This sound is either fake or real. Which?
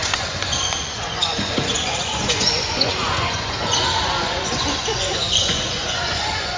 fake